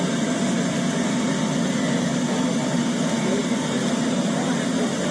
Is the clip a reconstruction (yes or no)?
no